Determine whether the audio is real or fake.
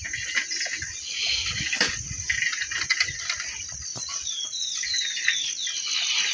real